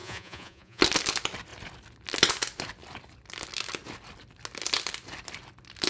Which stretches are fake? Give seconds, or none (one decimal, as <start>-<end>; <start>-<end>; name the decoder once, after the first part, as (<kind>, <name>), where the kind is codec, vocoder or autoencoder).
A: 0.0-0.8 (vocoder, Vocos)